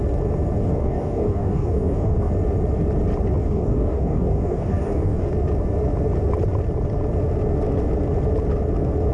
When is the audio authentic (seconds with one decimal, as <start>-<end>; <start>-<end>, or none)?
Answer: 0.0-0.6; 2.3-3.4; 5.3-9.1